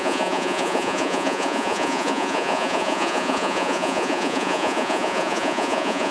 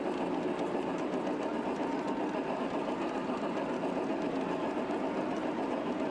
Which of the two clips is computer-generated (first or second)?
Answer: first